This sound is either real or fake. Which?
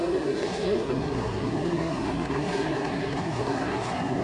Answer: fake